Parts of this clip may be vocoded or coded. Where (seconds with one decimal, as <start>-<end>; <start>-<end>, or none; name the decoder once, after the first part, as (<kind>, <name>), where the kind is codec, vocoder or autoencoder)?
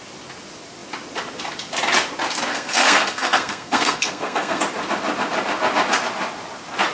2.5-4.6 (codec, SNAC)